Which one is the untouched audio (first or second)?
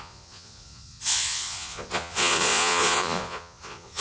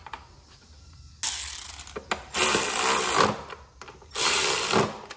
second